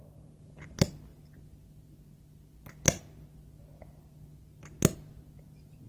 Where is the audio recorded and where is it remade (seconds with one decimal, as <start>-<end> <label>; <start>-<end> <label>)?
0.0-5.9 recorded